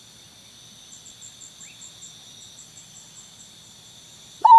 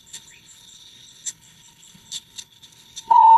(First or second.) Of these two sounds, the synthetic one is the second